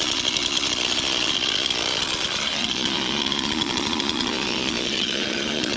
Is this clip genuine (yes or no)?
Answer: no